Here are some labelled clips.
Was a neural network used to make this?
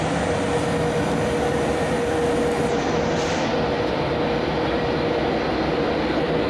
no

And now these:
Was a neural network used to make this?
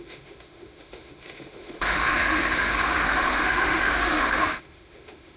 yes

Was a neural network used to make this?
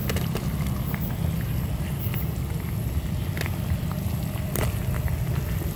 no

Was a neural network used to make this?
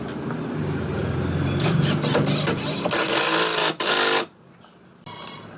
no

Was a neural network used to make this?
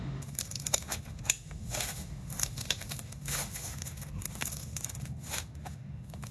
yes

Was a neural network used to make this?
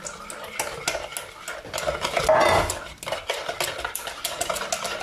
no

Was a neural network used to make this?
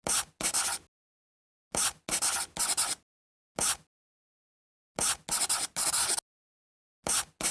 no